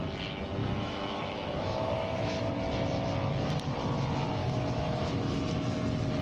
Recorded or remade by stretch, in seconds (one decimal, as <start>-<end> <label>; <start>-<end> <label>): 0.0-0.6 recorded; 0.6-2.5 remade; 2.5-4.4 recorded; 4.4-5.4 remade; 5.4-6.2 recorded